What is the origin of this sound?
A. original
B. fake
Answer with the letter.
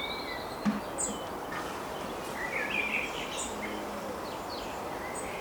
A